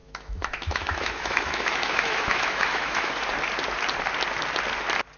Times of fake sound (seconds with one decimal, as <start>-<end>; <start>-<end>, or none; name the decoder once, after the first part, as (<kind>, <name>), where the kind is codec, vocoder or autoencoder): 0.0-3.1 (autoencoder, DAC-VAE)